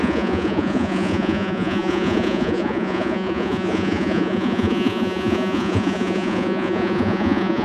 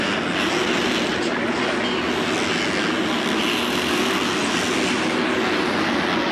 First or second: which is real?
second